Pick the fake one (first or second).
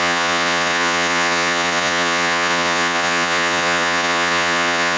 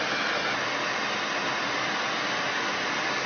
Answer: first